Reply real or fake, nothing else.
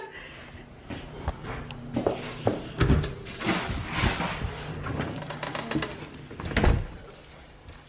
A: real